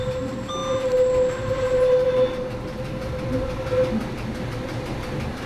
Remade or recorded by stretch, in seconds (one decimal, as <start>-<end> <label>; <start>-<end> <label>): 0.0-5.5 recorded